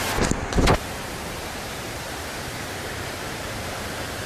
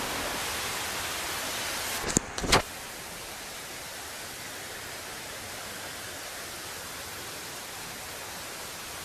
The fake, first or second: first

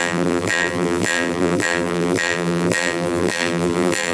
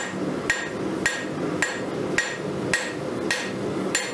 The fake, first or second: first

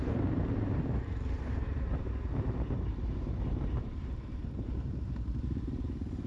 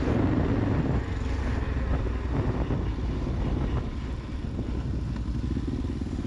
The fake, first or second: first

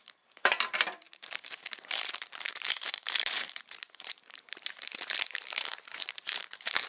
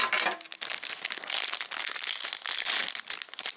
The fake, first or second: first